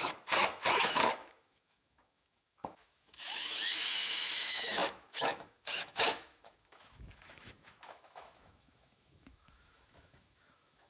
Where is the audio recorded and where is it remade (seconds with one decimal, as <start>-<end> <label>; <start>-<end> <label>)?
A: 0.0-10.9 remade